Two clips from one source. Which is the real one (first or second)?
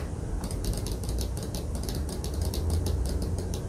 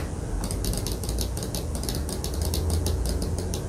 second